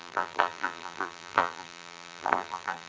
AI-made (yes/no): yes